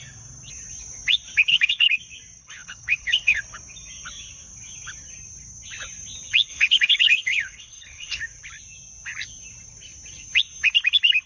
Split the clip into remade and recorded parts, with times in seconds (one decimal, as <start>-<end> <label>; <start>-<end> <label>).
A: 0.0-1.5 recorded; 1.5-2.0 remade; 2.0-2.4 recorded; 2.4-3.4 remade; 3.4-6.5 recorded; 6.5-8.2 remade; 8.2-11.3 recorded